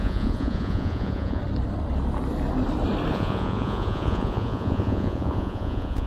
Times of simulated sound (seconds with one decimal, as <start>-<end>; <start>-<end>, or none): 0.0-1.4; 3.1-6.1